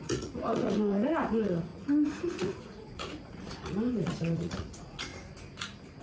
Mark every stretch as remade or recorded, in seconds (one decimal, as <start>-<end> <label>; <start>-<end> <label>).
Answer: 0.0-5.1 remade; 5.1-6.0 recorded